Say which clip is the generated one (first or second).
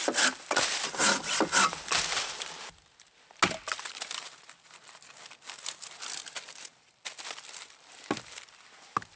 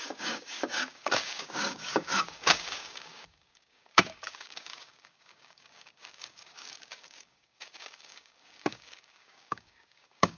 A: second